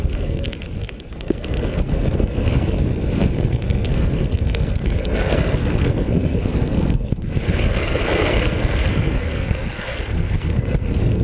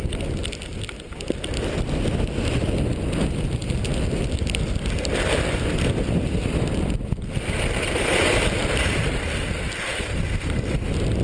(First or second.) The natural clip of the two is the second